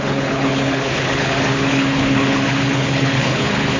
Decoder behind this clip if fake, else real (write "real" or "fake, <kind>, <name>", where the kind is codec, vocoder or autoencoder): fake, codec, HILCodec